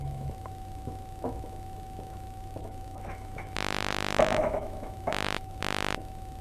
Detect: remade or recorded remade